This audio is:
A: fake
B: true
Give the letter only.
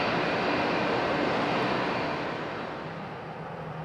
B